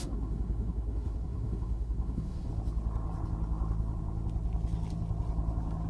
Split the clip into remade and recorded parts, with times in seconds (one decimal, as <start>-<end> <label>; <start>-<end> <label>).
0.0-2.5 remade; 2.5-5.9 recorded